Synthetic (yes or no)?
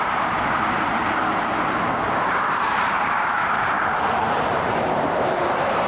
yes